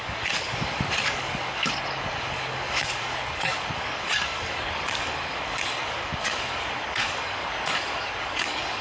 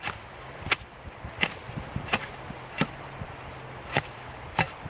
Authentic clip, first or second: second